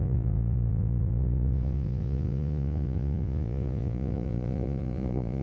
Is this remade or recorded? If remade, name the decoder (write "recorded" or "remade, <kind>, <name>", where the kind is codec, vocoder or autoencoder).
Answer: remade, vocoder, Vocos